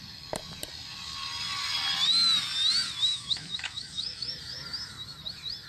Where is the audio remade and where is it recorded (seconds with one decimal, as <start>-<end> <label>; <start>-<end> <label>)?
0.0-3.1 recorded; 3.1-4.3 remade; 4.3-5.7 recorded